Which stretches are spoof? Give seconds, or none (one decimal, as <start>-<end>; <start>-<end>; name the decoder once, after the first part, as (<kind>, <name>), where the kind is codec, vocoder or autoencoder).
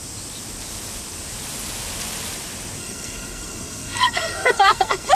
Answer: 2.8-5.1 (codec, SNAC)